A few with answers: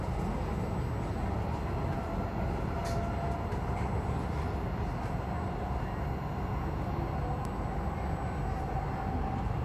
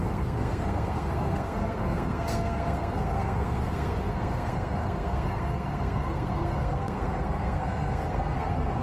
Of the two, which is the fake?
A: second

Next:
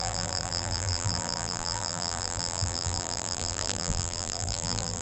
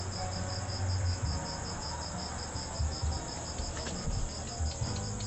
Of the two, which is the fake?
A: first